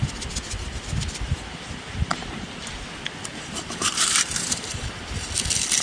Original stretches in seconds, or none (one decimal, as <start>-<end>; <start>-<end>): 0.0-2.1; 2.7-3.3; 4.9-5.8